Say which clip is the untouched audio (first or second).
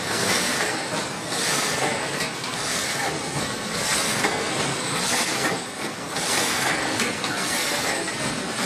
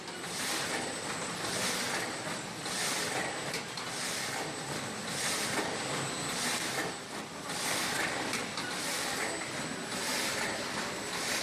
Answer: second